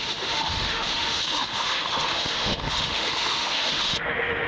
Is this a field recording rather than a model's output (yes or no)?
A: no